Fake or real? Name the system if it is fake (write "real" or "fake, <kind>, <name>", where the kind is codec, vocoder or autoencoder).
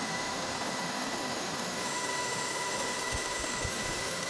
fake, autoencoder, DAC-VAE